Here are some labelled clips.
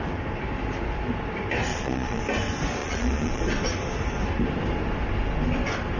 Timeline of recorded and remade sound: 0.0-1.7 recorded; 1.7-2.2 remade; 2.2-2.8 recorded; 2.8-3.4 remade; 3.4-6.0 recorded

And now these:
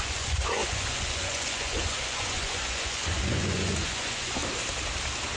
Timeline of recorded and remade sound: 0.0-4.4 remade; 4.4-5.4 recorded

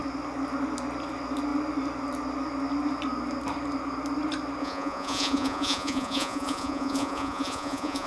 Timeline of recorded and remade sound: 0.0-4.6 recorded; 4.6-8.1 remade

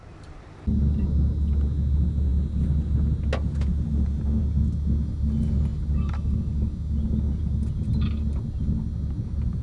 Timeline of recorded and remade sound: 0.0-9.6 recorded